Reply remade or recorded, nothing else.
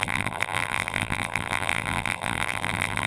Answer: remade